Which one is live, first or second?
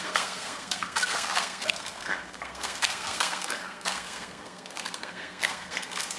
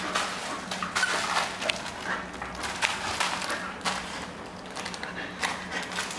second